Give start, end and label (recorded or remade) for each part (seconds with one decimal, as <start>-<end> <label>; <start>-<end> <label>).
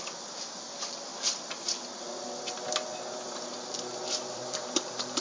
0.0-1.1 remade; 1.1-4.1 recorded; 4.1-5.2 remade